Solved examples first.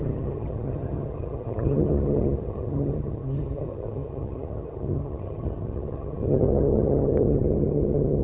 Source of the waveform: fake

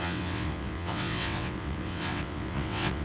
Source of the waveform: fake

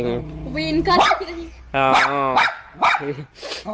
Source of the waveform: real